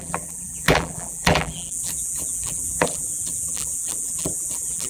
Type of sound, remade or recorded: remade